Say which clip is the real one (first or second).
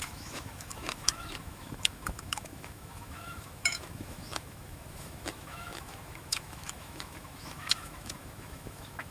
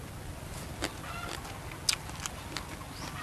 second